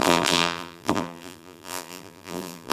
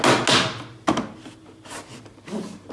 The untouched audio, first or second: second